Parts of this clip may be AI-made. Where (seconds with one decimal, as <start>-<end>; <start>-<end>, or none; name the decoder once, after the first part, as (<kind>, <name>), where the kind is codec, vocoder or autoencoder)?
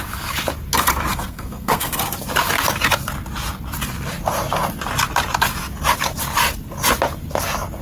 1.1-2.0 (codec, SNAC)